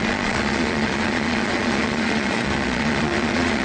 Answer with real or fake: fake